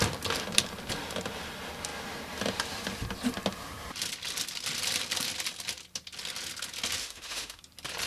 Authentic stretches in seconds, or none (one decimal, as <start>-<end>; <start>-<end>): 0.0-7.0; 7.6-8.1